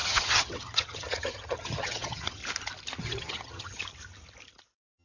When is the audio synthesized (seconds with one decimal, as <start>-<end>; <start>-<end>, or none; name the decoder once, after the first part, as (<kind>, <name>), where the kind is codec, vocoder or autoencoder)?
0.0-2.4 (vocoder, HiFi-GAN); 3.0-3.8